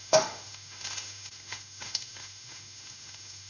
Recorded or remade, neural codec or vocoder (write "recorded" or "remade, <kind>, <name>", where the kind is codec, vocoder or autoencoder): remade, autoencoder, DAC-VAE